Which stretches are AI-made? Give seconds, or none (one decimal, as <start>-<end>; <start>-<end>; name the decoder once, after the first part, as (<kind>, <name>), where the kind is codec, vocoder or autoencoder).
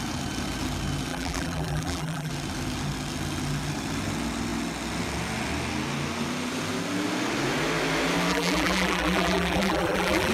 1.1-2.3 (vocoder, BigVGAN v2); 8.3-10.3